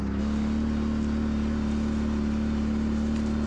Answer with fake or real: real